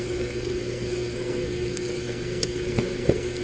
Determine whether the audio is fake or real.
fake